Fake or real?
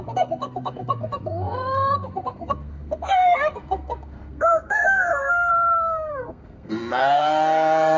fake